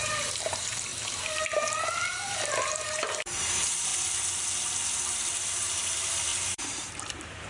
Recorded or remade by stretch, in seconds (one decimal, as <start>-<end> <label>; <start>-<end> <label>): 0.0-0.9 remade; 0.9-2.1 recorded; 2.1-3.9 remade; 3.9-4.9 recorded; 4.9-7.5 remade